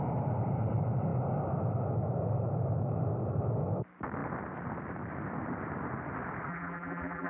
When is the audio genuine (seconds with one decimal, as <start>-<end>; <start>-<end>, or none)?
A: 0.0-6.5